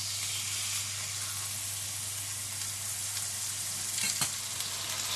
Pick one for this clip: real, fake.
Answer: real